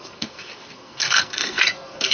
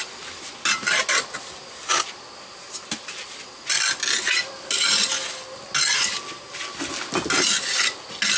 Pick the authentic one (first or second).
second